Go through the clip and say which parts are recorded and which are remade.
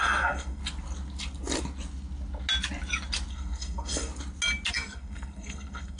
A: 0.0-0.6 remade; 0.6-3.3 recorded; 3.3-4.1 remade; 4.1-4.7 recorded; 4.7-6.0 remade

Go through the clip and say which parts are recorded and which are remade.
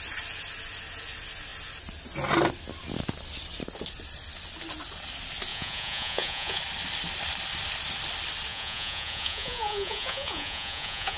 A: 0.0-5.5 recorded; 5.5-6.6 remade; 6.6-8.5 recorded; 8.5-11.2 remade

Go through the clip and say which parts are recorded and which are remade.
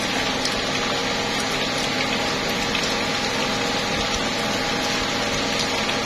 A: 0.0-6.1 recorded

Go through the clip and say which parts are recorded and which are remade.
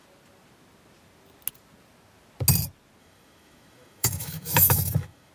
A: 0.0-3.0 recorded; 3.0-5.3 remade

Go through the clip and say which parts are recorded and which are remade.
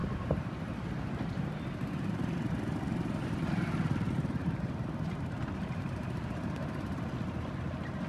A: 0.0-2.8 remade; 2.8-4.4 recorded; 4.4-7.0 remade; 7.0-8.1 recorded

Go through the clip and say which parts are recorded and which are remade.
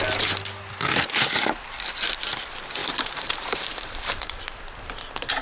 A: 0.0-2.8 recorded; 2.8-4.4 remade; 4.4-5.4 recorded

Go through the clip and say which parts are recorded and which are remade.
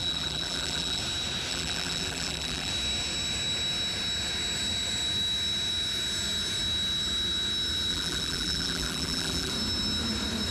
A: 0.0-1.0 remade; 1.0-1.5 recorded; 1.5-2.7 remade; 2.7-7.9 recorded; 7.9-9.5 remade; 9.5-10.5 recorded